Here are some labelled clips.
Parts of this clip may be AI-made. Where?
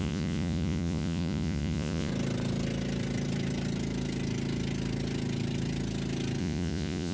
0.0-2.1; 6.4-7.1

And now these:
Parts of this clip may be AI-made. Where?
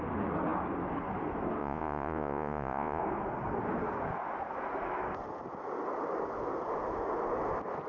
1.6-3.0